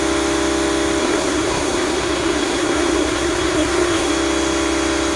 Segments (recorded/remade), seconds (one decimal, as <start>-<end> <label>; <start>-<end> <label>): 0.0-1.0 recorded; 1.0-4.1 remade; 4.1-5.2 recorded